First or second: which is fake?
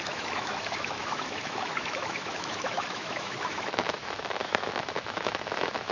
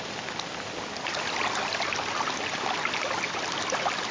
first